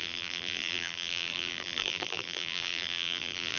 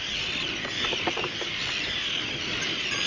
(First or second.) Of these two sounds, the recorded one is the second